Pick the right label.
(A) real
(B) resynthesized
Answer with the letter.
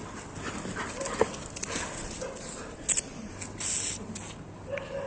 A